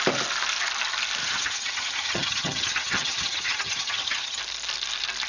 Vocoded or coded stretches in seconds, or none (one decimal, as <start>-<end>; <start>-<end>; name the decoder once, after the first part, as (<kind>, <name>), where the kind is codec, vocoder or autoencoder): 1.2-4.4 (vocoder, HiFi-GAN)